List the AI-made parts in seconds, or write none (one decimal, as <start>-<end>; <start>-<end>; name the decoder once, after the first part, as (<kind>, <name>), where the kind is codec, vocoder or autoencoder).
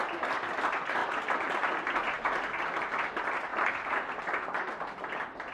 none